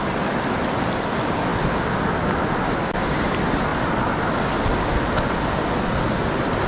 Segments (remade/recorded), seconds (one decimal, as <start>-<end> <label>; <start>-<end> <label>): 0.0-6.7 recorded